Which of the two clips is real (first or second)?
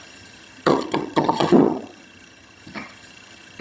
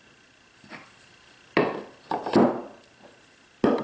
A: second